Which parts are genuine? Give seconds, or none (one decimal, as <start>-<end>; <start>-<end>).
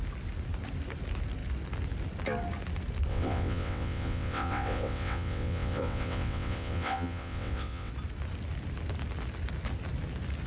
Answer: 0.0-3.1; 7.9-10.5